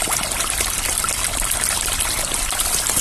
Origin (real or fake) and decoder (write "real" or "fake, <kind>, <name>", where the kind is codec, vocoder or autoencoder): fake, vocoder, BigVGAN v2